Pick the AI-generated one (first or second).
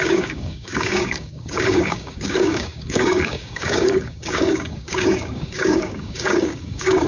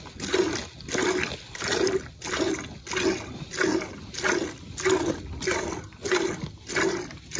first